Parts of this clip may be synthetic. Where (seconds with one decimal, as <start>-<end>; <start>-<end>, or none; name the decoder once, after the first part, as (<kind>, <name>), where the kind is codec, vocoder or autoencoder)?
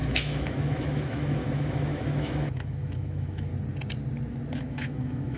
0.0-3.5 (autoencoder, DAC-VAE); 4.5-5.4